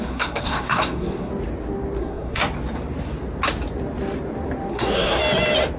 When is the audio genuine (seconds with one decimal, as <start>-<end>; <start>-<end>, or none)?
1.3-2.0; 2.4-4.7; 5.2-5.8